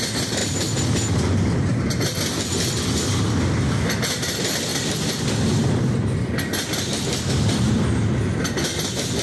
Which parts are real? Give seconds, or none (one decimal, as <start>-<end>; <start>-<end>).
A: 0.0-9.2

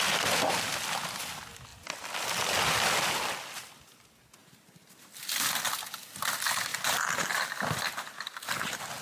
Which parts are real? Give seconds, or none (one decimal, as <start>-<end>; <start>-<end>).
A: 0.0-9.0

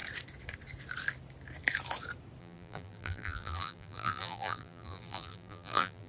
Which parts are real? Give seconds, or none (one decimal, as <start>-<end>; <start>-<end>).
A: 0.0-2.4

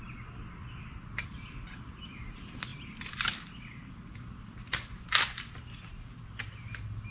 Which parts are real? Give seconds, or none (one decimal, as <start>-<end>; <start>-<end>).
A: 0.0-0.6; 1.9-2.7; 4.5-7.1

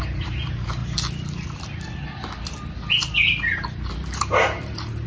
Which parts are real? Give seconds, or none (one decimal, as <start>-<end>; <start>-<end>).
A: 0.8-3.9